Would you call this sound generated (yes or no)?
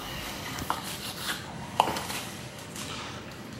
yes